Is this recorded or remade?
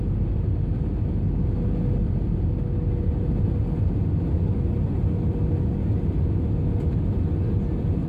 recorded